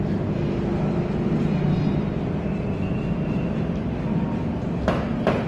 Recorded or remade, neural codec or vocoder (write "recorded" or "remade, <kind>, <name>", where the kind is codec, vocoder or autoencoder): recorded